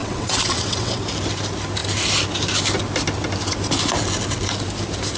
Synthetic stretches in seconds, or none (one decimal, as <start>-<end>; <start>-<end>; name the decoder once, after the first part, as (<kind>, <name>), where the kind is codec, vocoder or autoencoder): 0.0-1.0 (vocoder, WaveNeXt)